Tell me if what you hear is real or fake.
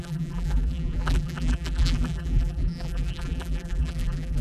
fake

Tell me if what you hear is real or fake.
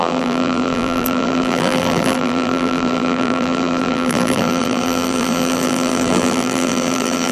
fake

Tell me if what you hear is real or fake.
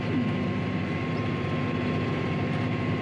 real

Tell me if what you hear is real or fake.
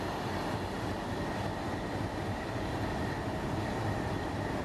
fake